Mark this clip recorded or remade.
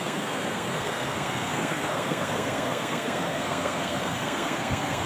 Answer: remade